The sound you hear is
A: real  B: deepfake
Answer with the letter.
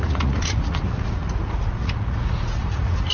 B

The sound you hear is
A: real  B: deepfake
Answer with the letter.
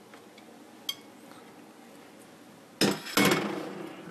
A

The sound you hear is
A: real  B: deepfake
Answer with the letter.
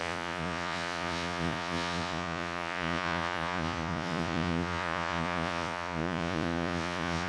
B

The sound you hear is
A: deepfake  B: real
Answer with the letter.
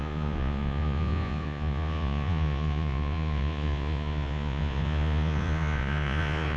A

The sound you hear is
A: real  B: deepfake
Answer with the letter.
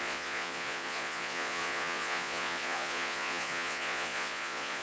B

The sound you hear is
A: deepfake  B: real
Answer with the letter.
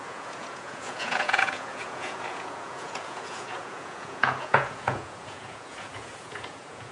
A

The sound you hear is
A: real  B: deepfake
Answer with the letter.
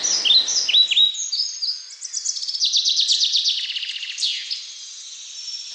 A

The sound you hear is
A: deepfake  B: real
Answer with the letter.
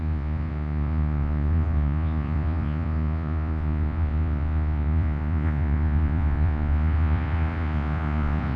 A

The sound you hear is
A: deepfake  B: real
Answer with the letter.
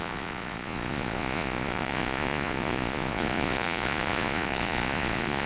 A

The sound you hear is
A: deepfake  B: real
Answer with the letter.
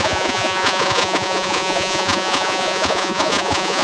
A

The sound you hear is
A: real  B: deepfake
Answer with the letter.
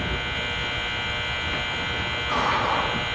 A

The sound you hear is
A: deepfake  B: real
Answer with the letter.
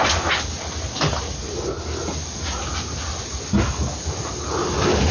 B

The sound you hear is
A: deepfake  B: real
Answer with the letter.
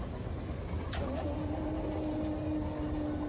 B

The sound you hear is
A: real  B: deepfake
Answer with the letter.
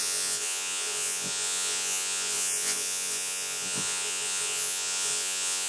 B